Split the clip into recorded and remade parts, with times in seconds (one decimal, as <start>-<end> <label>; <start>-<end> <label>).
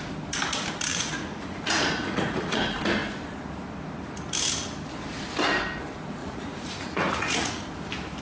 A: 0.0-0.9 recorded; 0.9-2.6 remade; 2.6-6.2 recorded; 6.2-7.6 remade; 7.6-8.2 recorded